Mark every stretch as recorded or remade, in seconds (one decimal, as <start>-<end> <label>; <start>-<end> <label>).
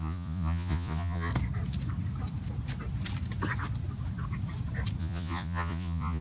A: 0.0-1.3 remade; 1.3-5.0 recorded; 5.0-6.2 remade